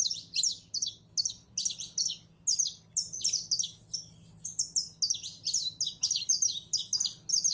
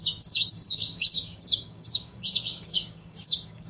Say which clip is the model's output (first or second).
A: second